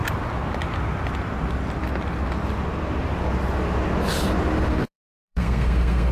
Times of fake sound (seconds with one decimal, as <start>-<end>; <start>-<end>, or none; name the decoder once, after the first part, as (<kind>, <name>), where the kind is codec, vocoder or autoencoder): 4.7-6.1 (codec, SNAC)